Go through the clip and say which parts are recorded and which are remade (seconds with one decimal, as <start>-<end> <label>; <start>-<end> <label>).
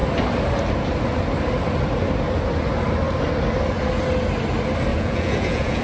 0.0-4.9 recorded; 4.9-5.8 remade